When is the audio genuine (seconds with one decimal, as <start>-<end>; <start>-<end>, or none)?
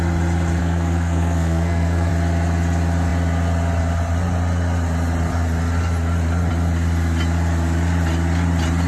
0.0-0.6; 2.1-8.9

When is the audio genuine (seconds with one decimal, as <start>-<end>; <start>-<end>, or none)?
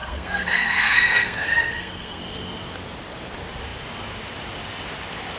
2.2-5.4